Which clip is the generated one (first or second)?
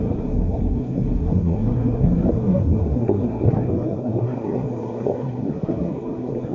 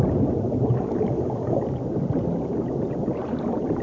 first